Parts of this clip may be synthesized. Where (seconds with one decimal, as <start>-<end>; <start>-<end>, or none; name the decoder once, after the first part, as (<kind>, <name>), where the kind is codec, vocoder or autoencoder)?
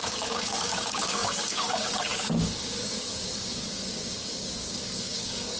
0.0-5.6 (codec, DAC)